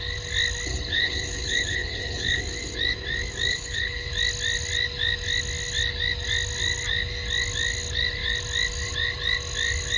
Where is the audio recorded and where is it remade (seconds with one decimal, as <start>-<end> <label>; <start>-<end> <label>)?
0.0-0.7 recorded; 0.7-2.4 remade; 2.4-3.5 recorded; 3.5-4.1 remade; 4.1-10.0 recorded